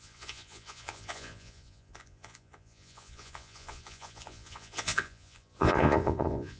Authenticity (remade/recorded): remade